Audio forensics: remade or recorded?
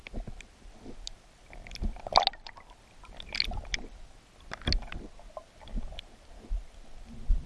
recorded